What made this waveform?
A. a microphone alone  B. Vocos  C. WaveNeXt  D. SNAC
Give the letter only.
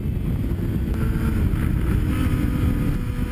A